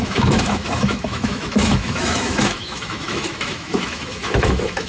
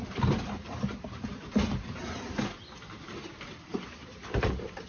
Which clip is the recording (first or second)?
second